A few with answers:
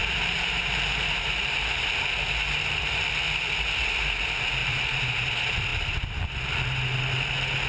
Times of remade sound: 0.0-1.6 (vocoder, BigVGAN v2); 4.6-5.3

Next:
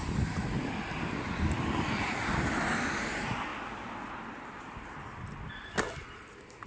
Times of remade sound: 0.0-2.7 (vocoder, BigVGAN v2)

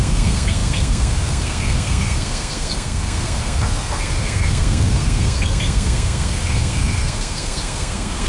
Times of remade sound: 0.0-8.3 (codec, SNAC)

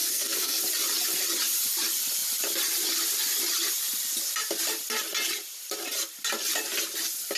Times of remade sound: 0.0-0.6 (codec, SNAC)